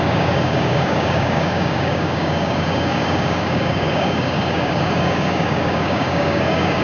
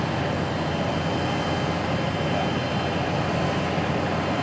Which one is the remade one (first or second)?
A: first